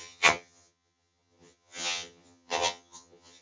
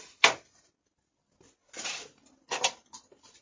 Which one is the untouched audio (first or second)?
second